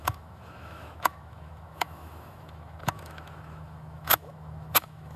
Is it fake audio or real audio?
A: fake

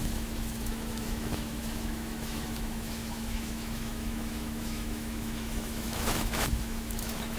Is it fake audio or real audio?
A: fake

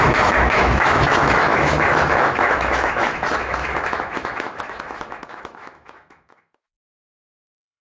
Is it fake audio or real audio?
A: fake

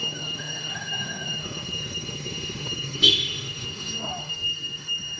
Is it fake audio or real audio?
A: fake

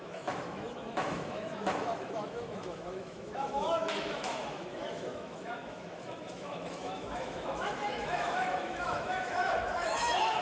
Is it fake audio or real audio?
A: fake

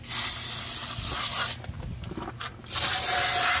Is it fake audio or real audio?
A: real